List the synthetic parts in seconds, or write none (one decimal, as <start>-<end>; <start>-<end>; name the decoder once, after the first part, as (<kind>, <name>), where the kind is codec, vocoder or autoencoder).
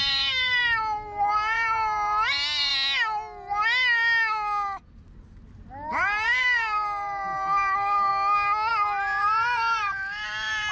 0.0-0.6 (vocoder, BigVGAN v2); 1.3-2.7; 5.9-8.1; 8.7-10.7